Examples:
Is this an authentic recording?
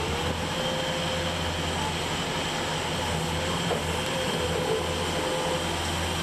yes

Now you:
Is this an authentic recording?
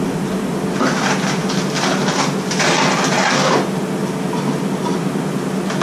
yes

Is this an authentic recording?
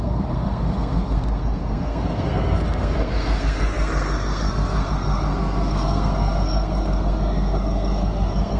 no